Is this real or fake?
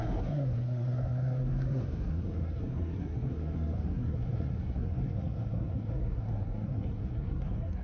fake